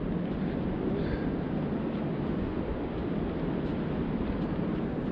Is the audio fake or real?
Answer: real